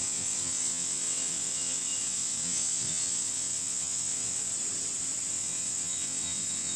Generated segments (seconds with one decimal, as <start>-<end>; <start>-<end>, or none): 0.0-4.5; 5.3-6.8